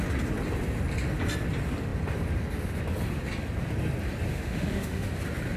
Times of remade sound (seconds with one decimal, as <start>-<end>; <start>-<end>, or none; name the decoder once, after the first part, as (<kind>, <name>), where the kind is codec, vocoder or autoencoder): 4.3-5.1 (autoencoder, DAC-VAE)